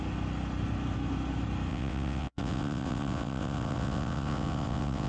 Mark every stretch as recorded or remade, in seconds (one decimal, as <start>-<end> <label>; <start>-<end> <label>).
0.0-1.7 recorded; 1.7-5.1 remade